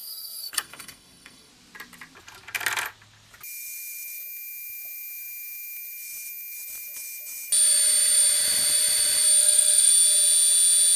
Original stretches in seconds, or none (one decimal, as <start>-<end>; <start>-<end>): 1.5-9.4; 9.9-11.0